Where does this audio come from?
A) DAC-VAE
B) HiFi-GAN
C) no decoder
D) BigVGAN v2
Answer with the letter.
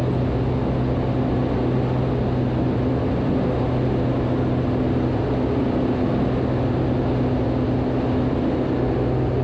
C